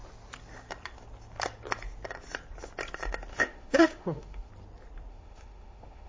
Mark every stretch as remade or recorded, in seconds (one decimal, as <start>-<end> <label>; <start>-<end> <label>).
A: 0.0-3.3 recorded; 3.3-4.5 remade; 4.5-5.1 recorded; 5.1-6.1 remade